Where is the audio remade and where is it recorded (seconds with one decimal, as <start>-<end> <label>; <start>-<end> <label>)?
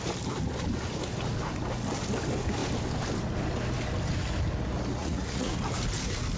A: 0.0-5.0 recorded; 5.0-5.5 remade; 5.5-6.4 recorded